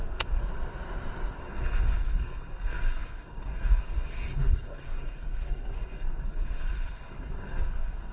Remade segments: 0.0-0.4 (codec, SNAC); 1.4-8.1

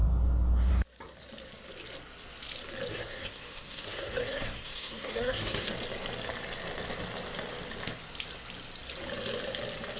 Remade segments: 2.9-5.7 (codec, SNAC)

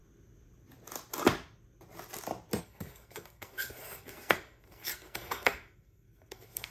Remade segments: 2.6-6.7 (codec, SNAC)

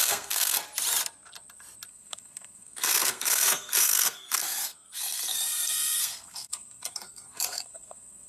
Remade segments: 0.0-0.6 (codec, SNAC); 1.9-8.3

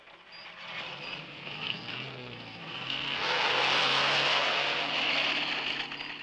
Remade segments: 1.2-4.9 (codec, SNAC)

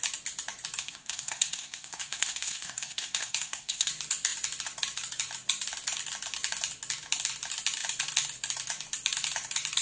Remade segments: 0.8-3.9 (codec, SNAC)

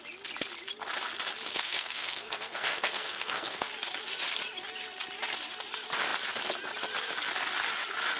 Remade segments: 1.5-3.7 (codec, SNAC)